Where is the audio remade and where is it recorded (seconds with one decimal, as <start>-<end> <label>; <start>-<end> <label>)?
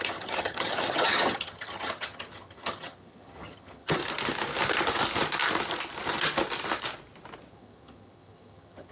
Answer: 0.0-4.0 remade; 4.0-7.5 recorded; 7.5-8.9 remade